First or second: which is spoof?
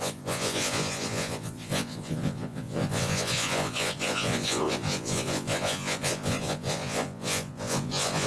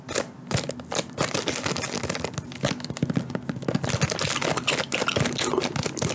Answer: first